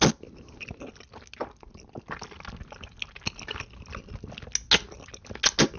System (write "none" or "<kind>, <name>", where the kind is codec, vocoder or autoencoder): none